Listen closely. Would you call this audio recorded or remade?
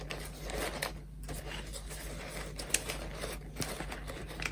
recorded